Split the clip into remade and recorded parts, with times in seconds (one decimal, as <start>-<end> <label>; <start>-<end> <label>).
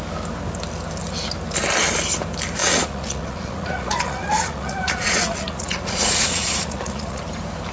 0.0-2.6 recorded; 2.6-7.2 remade; 7.2-7.7 recorded